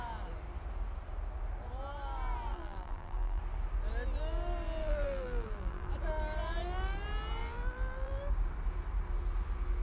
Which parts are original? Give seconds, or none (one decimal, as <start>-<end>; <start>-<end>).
0.0-2.5; 3.4-4.8; 5.9-7.4; 8.2-9.8